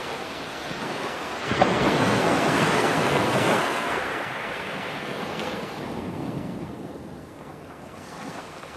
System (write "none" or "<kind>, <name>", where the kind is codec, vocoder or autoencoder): codec, SNAC